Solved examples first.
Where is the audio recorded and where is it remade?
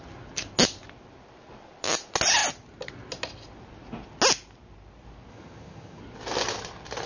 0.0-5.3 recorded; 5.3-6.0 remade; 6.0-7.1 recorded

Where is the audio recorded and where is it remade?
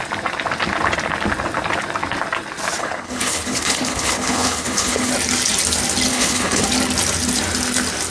0.0-2.8 recorded; 2.8-5.1 remade; 5.1-6.1 recorded; 6.1-6.6 remade; 6.6-8.1 recorded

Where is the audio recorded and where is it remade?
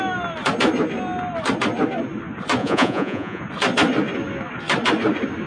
0.0-2.6 recorded; 2.6-3.4 remade; 3.4-5.5 recorded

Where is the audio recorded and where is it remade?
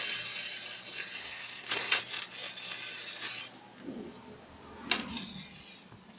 0.0-1.2 recorded; 1.2-2.0 remade; 2.0-6.2 recorded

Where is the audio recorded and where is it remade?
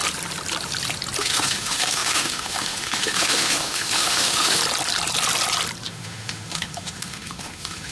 0.0-1.2 recorded; 1.2-4.6 remade; 4.6-5.9 recorded; 5.9-7.9 remade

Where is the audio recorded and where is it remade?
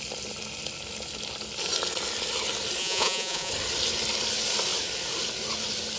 0.0-2.8 recorded; 2.8-3.5 remade; 3.5-6.0 recorded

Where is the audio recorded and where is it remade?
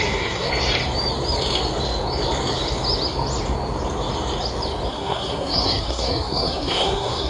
0.0-0.5 remade; 0.5-4.9 recorded; 4.9-7.3 remade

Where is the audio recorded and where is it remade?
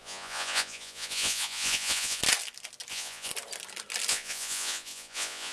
0.0-2.2 remade; 2.2-2.9 recorded; 2.9-3.3 remade; 3.3-4.1 recorded; 4.1-5.5 remade